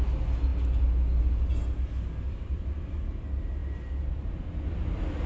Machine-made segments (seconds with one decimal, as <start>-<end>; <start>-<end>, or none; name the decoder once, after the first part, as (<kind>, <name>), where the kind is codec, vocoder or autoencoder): none